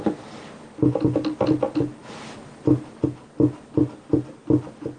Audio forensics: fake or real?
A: real